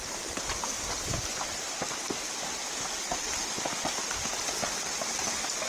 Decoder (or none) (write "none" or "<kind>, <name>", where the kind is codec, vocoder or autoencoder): none